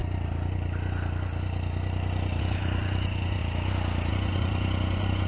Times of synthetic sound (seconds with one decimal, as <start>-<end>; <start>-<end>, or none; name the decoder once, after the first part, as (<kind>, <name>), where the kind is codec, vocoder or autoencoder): 2.4-3.4 (vocoder, Vocos); 4.1-5.3